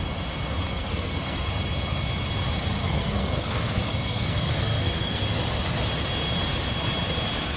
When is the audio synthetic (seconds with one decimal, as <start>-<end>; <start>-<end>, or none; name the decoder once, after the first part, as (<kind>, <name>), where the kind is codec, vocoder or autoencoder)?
0.7-1.5 (codec, SNAC); 2.8-5.2